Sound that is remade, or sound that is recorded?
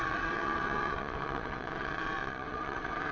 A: remade